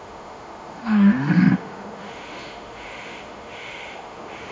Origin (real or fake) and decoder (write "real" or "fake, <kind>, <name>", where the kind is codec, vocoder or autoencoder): fake, autoencoder, DAC-VAE